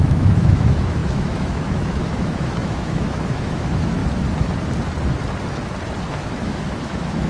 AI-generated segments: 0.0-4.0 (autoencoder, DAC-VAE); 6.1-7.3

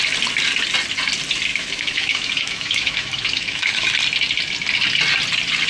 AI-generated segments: 1.5-3.9 (autoencoder, DAC-VAE)

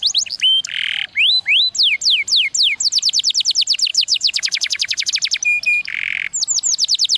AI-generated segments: 3.9-5.1 (autoencoder, DAC-VAE)

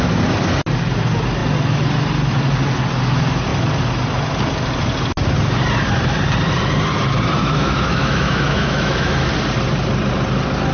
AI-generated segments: 7.4-9.3 (autoencoder, DAC-VAE)

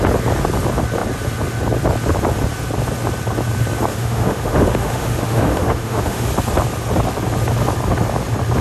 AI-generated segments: 3.9-6.3 (autoencoder, DAC-VAE)

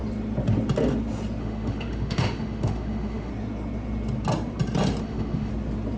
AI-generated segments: 1.4-3.3 (autoencoder, DAC-VAE); 5.0-5.5

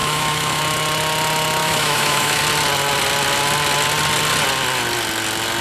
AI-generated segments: 0.0-0.6 (autoencoder, DAC-VAE); 1.6-2.4